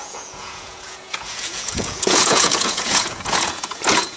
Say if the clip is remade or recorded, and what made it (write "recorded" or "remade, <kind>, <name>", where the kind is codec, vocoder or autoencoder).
remade, vocoder, Vocos